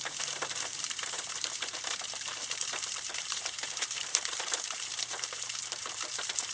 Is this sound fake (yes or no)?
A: yes